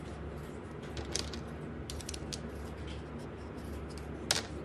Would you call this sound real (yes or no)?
yes